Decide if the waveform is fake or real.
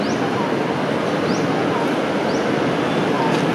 real